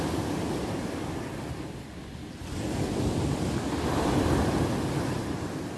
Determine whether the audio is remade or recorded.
recorded